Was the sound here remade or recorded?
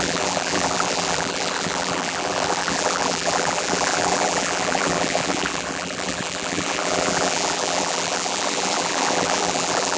remade